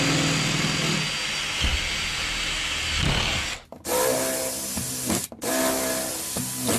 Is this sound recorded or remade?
recorded